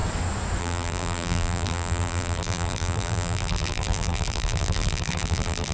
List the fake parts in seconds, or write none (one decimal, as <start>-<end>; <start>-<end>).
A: 0.6-5.7